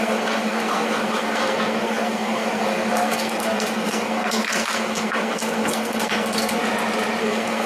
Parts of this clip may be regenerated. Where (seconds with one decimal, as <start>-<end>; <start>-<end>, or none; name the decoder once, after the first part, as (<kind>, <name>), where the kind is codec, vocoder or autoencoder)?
0.0-6.6 (codec, SNAC); 7.2-7.7